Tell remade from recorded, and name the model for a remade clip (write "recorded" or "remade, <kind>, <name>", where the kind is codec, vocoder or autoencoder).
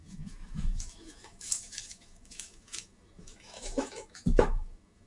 remade, autoencoder, DAC-VAE